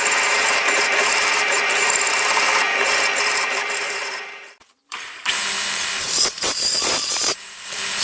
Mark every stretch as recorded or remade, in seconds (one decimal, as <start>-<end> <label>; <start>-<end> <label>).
0.0-2.5 remade; 2.5-3.3 recorded; 3.3-8.0 remade